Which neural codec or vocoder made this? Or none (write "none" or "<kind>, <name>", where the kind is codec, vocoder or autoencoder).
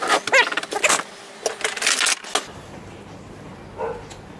none